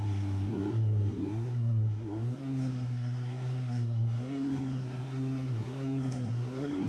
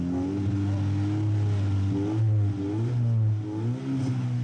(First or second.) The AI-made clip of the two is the first